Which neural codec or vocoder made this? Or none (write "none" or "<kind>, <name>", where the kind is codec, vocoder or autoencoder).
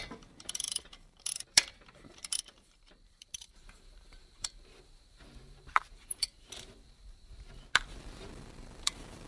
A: vocoder, BigVGAN v2